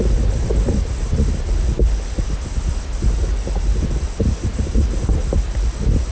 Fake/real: real